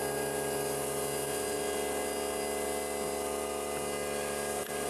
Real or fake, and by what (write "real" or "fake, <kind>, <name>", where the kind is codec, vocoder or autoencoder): real